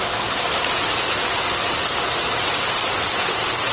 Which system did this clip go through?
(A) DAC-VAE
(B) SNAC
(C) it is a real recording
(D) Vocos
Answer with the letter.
C